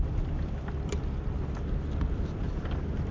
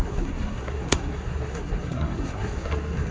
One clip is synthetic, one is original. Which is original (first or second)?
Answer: first